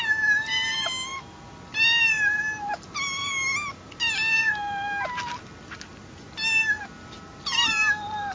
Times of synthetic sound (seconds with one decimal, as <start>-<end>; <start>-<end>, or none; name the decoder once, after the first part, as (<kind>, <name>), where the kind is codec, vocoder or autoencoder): none